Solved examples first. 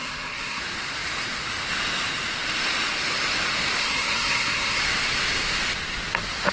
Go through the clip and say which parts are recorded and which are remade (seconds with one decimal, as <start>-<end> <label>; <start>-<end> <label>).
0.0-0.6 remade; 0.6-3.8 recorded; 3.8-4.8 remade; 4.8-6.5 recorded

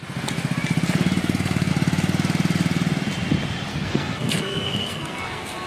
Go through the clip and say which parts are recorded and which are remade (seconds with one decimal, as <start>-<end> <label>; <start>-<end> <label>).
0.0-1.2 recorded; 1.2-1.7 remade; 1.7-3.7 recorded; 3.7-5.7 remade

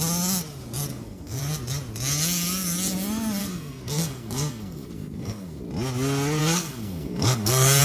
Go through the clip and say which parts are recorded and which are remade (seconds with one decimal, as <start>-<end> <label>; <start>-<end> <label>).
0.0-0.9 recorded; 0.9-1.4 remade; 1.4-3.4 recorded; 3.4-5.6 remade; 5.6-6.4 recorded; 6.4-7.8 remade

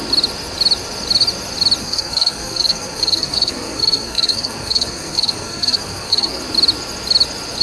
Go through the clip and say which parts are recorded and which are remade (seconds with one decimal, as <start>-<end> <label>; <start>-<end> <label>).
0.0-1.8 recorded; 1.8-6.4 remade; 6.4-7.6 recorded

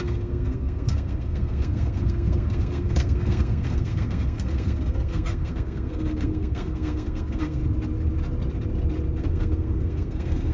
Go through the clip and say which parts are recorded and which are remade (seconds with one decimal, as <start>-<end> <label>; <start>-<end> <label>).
0.0-7.6 remade; 7.6-9.2 recorded; 9.2-10.5 remade

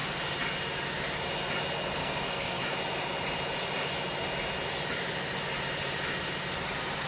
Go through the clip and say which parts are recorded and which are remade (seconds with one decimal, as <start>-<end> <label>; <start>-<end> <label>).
0.0-2.0 recorded; 2.0-2.6 remade; 2.6-7.1 recorded

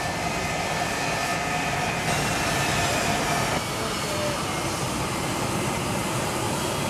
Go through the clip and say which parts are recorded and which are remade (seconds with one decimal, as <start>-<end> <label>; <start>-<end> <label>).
0.0-6.9 recorded

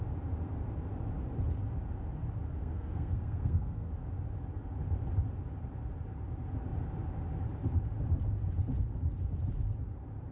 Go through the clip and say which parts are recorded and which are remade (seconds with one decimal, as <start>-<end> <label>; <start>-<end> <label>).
0.0-2.6 recorded; 2.6-3.9 remade; 3.9-10.3 recorded